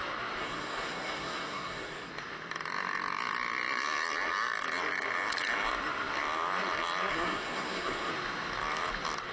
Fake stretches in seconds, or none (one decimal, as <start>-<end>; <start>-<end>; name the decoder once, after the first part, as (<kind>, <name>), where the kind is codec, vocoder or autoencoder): 0.4-2.1 (codec, SNAC); 7.1-8.1